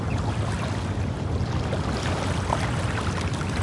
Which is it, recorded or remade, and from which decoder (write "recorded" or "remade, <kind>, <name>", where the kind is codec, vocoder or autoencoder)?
recorded